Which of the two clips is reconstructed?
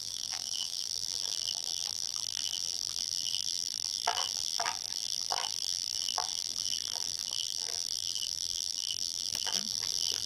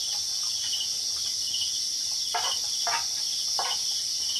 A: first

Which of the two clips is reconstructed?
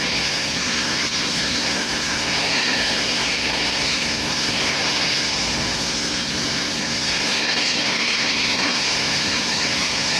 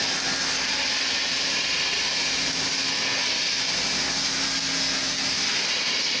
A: first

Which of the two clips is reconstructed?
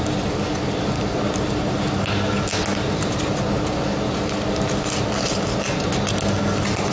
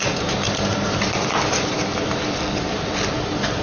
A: second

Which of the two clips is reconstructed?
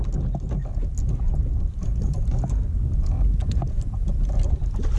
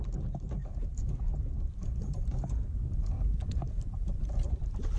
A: second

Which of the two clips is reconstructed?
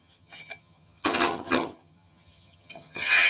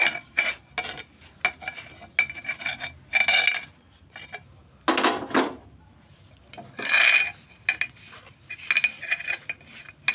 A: first